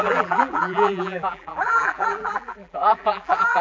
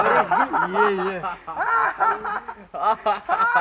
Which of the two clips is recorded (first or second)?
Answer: second